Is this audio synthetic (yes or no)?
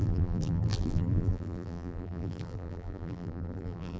yes